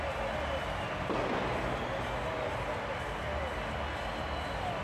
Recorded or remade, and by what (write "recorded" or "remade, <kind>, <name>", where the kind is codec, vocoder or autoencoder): recorded